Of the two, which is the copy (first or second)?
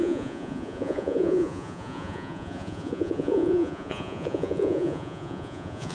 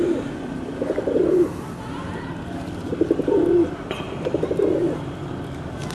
first